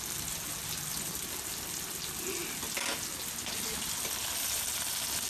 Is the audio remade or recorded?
recorded